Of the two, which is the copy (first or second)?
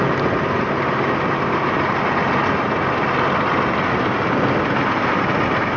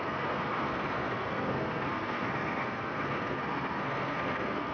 second